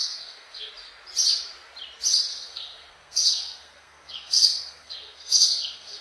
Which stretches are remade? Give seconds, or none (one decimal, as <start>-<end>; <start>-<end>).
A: 0.0-0.7; 2.3-6.0

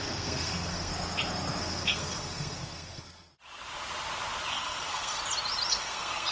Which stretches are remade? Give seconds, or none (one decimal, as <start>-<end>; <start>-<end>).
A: 0.0-0.9; 1.6-3.3; 4.5-5.2; 5.7-6.3

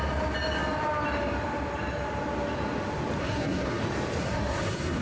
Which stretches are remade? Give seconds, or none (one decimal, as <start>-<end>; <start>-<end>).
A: 3.2-3.8; 4.2-5.0

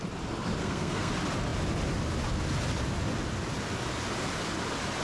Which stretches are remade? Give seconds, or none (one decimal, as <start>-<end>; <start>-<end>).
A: 0.6-1.1

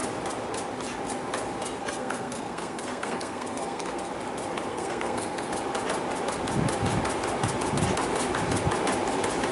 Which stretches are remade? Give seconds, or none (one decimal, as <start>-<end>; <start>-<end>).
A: 1.8-4.1; 4.7-5.5

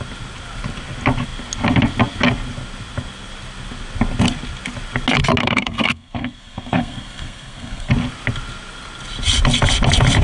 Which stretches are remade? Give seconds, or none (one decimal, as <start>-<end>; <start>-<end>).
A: 5.4-7.9

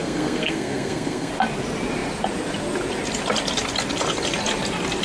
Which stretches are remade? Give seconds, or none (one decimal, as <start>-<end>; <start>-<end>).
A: 0.0-1.3

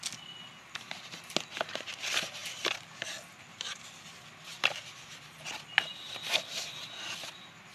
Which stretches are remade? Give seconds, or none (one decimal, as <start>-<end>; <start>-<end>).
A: none